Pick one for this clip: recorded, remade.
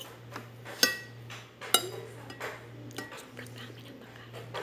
recorded